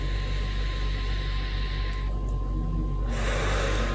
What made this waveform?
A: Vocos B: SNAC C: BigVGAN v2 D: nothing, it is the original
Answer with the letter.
D